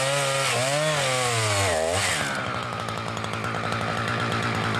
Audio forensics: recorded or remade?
recorded